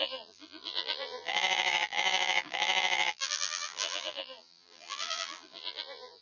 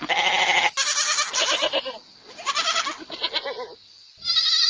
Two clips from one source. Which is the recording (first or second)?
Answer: second